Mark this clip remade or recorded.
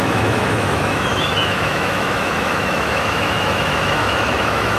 remade